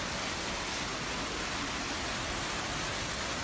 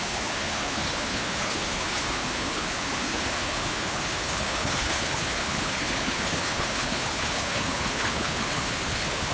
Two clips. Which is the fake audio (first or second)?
second